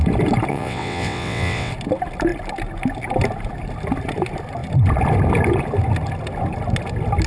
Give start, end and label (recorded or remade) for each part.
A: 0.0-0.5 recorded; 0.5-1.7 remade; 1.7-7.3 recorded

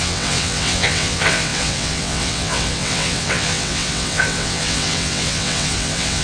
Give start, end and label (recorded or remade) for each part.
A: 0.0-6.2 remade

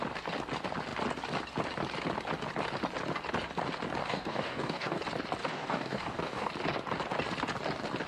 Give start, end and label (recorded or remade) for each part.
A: 0.0-4.0 recorded; 4.0-5.0 remade; 5.0-5.4 recorded; 5.4-6.5 remade; 6.5-8.1 recorded